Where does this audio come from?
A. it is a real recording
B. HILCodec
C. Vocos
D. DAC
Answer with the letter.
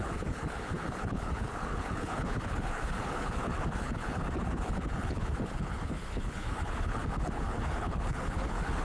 B